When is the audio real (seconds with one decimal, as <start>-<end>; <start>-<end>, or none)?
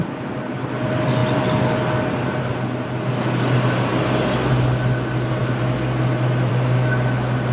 0.0-7.5